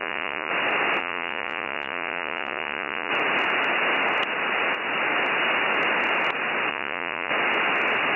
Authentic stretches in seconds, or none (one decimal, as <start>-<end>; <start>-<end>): 0.5-1.0; 3.1-6.7; 7.3-8.2

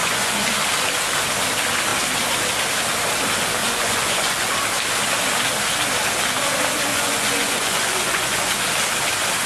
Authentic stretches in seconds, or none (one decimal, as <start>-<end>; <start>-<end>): 0.5-3.6; 4.5-6.9; 8.5-9.5

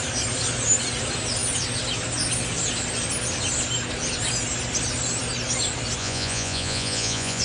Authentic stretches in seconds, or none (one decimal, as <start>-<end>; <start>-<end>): 0.0-6.0

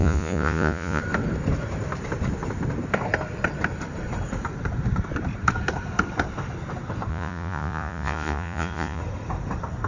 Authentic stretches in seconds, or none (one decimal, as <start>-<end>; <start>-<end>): 1.0-7.1; 9.0-9.9

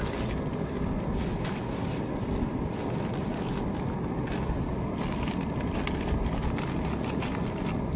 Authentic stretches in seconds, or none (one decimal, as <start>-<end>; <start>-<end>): 0.0-8.0

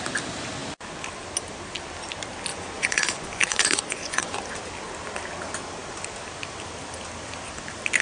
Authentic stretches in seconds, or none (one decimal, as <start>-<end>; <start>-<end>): 0.0-2.5; 4.4-8.0

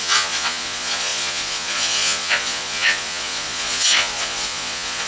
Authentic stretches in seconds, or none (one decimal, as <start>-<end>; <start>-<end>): none